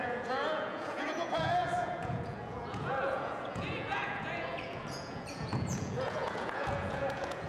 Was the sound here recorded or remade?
remade